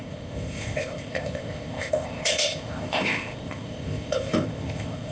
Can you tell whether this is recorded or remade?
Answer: remade